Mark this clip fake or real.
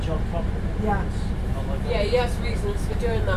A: real